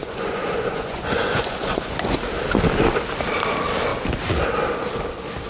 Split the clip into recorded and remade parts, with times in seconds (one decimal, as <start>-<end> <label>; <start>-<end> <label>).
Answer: 0.0-2.2 remade; 2.2-5.5 recorded